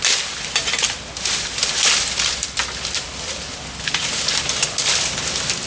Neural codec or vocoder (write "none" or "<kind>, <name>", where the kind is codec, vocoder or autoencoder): none